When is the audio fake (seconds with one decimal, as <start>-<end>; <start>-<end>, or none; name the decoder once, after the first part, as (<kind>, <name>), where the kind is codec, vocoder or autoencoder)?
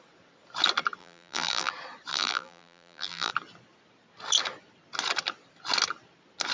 1.0-1.7 (vocoder, BigVGAN v2); 2.1-3.3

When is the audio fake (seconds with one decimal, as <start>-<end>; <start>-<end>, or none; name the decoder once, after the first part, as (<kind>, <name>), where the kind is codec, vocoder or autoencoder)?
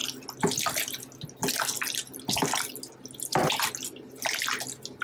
none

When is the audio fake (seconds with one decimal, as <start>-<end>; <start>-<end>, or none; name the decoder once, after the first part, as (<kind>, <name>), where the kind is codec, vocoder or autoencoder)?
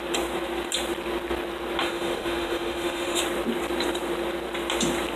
1.8-3.2 (autoencoder, DAC-VAE)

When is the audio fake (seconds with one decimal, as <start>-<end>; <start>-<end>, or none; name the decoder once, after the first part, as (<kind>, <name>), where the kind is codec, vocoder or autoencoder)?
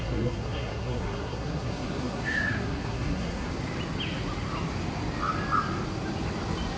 0.0-3.5 (codec, SNAC)